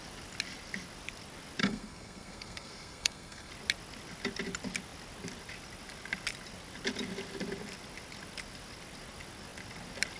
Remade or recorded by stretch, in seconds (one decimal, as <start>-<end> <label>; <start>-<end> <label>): 0.0-1.6 recorded; 1.6-3.5 remade; 3.5-10.2 recorded